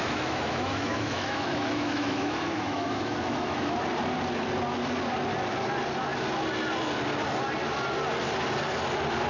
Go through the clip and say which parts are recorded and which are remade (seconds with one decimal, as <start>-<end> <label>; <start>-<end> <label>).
0.0-3.8 remade; 3.8-9.3 recorded